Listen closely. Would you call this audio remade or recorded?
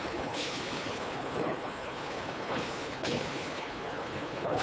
remade